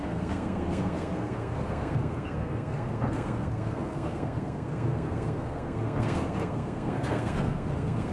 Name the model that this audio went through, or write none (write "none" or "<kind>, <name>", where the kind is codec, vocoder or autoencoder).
codec, SNAC